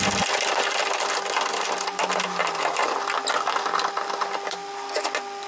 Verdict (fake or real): real